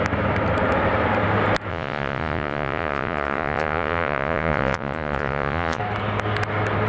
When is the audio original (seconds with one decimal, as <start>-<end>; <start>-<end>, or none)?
0.0-1.7; 5.8-6.9